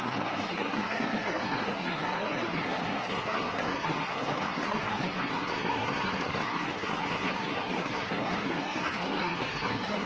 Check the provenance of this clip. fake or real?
fake